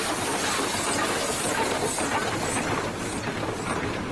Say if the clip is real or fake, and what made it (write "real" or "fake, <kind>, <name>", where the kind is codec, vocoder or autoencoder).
real